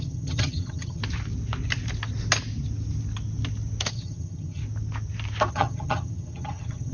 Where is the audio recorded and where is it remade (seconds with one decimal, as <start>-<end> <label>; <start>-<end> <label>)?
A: 0.0-1.0 remade; 1.0-3.9 recorded; 3.9-4.6 remade; 4.6-5.5 recorded; 5.5-6.9 remade